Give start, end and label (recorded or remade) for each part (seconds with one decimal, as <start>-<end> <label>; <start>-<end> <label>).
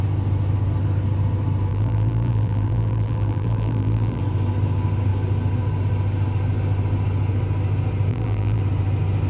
0.0-1.7 recorded; 1.7-4.2 remade; 4.2-8.1 recorded; 8.1-8.6 remade; 8.6-9.3 recorded